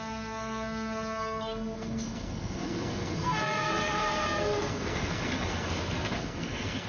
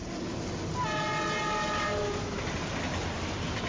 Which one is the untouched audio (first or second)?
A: second